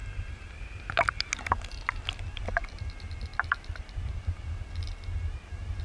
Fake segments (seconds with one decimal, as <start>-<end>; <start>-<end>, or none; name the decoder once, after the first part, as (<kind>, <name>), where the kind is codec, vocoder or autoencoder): 3.3-4.5 (vocoder, BigVGAN v2)